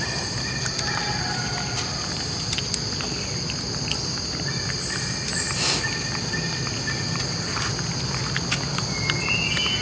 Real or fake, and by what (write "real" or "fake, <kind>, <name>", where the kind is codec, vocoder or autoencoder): real